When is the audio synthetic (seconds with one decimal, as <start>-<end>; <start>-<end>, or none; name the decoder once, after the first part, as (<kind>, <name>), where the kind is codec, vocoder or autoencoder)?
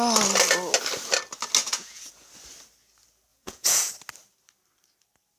1.6-2.3 (vocoder, Vocos); 3.3-3.9